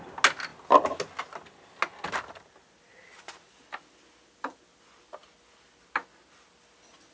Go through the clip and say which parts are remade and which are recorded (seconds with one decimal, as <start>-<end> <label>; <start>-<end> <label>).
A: 0.0-7.1 recorded